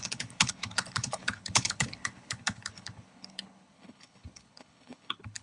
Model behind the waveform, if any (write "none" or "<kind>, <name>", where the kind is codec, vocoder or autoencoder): codec, HILCodec